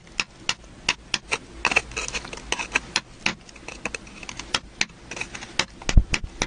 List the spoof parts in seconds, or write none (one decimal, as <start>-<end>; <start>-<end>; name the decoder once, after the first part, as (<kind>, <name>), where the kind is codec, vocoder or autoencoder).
none

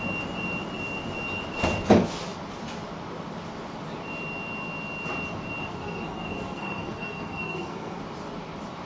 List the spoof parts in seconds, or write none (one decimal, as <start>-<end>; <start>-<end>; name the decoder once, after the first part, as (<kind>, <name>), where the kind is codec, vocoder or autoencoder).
5.6-8.0 (codec, SNAC)

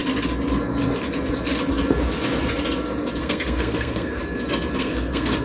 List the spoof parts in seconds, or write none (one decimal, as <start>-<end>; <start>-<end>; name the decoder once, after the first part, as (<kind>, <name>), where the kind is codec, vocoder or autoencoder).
3.2-4.2 (codec, SNAC); 4.8-5.4

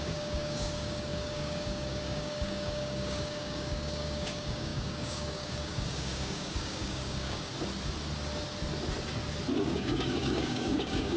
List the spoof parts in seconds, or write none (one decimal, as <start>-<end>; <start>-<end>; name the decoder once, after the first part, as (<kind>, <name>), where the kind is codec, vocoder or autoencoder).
0.0-7.5 (codec, DAC); 9.6-11.2